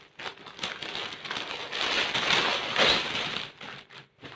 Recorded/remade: recorded